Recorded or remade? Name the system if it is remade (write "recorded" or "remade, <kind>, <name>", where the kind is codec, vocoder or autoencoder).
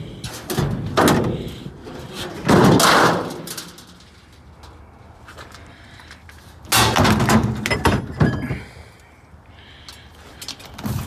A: recorded